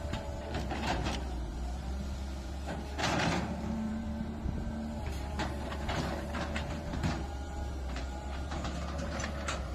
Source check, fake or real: fake